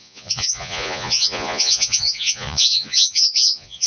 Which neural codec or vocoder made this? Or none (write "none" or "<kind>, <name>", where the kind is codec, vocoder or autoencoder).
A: vocoder, Vocos